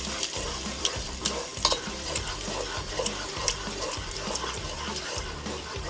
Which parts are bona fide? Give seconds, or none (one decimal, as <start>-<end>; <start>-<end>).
1.5-5.0